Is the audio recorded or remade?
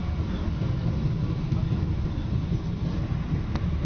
recorded